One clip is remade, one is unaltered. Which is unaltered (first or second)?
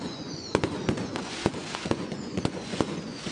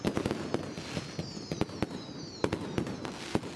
second